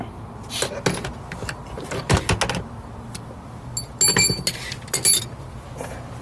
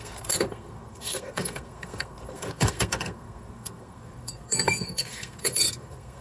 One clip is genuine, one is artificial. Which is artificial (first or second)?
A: second